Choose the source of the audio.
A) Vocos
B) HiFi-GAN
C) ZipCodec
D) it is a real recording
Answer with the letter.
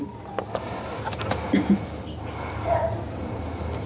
D